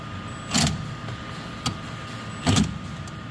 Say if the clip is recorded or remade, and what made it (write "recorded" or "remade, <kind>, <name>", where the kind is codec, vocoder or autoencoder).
recorded